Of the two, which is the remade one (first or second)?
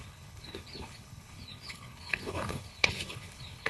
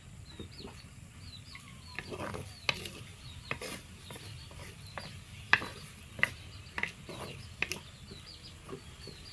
first